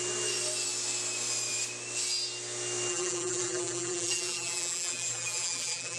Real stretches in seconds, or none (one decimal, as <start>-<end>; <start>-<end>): 0.0-2.9